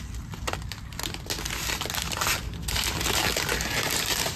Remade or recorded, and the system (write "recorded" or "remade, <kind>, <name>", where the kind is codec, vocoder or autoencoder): recorded